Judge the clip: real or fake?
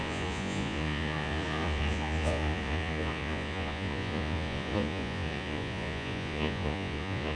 fake